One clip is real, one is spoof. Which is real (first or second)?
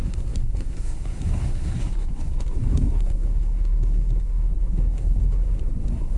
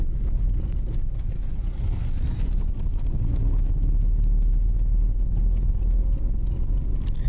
second